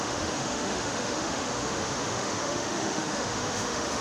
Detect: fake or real fake